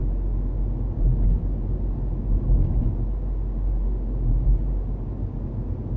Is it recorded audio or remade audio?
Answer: recorded